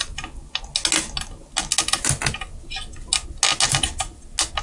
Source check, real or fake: real